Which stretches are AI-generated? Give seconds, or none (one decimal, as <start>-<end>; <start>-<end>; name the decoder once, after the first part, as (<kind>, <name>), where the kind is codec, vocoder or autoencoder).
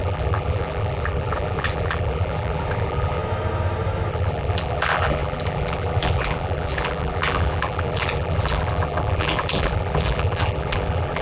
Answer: 0.0-3.2 (vocoder, BigVGAN v2); 4.1-11.2